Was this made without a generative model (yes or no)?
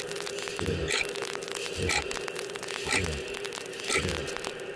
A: yes